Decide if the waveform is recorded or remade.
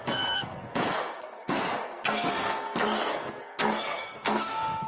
remade